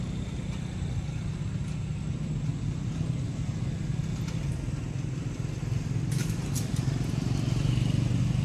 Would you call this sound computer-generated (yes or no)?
no